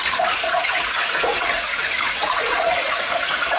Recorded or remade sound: remade